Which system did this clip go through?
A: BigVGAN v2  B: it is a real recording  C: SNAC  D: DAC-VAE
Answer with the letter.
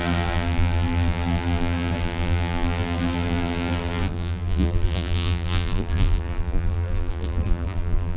A